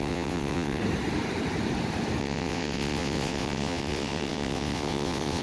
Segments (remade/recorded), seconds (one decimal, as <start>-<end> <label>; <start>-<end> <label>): 0.0-0.8 remade; 0.8-2.2 recorded; 2.2-5.4 remade